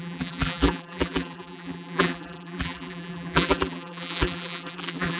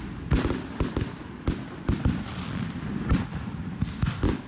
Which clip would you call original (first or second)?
second